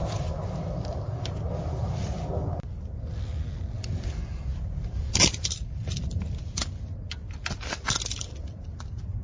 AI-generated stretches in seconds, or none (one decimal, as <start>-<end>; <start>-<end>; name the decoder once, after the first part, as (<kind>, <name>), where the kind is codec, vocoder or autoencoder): 4.8-6.4 (vocoder, BigVGAN v2); 7.5-9.2